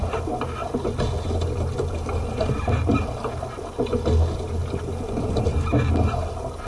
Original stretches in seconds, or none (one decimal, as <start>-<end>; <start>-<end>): 0.0-6.7